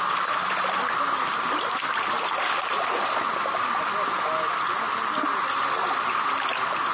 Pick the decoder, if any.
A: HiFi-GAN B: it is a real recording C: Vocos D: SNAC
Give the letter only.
B